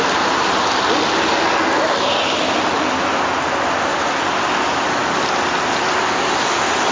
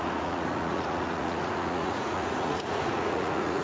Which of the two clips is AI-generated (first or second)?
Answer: second